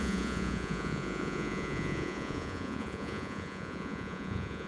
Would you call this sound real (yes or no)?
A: no